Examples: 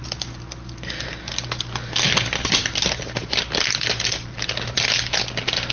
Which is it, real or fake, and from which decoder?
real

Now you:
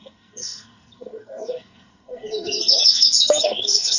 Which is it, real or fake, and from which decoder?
fake, codec, SNAC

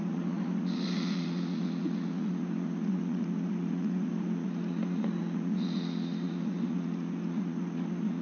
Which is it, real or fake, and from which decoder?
fake, vocoder, Vocos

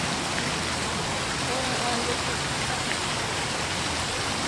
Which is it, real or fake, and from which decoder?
real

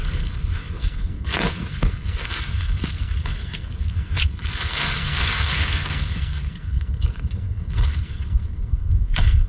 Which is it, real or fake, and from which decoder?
fake, codec, SNAC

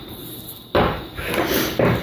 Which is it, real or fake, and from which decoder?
real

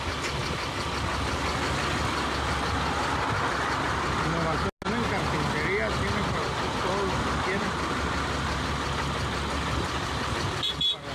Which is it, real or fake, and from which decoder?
real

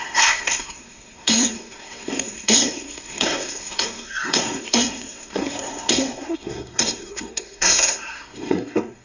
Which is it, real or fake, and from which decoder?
fake, codec, SNAC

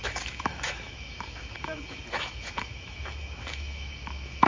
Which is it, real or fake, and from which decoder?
fake, autoencoder, DAC-VAE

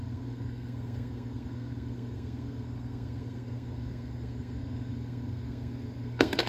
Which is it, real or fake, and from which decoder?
fake, codec, SNAC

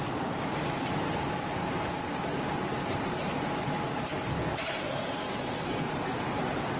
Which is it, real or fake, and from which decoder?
fake, vocoder, BigVGAN v2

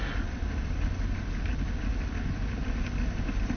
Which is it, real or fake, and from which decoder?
real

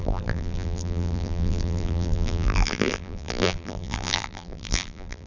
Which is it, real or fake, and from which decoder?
fake, vocoder, BigVGAN v2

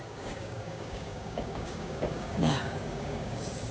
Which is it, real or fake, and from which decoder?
fake, codec, DAC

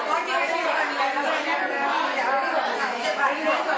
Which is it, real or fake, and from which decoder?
real